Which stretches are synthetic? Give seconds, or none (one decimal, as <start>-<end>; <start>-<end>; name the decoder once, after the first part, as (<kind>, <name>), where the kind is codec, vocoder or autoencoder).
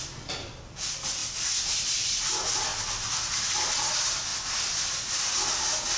none